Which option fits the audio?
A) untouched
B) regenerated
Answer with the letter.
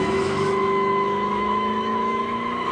B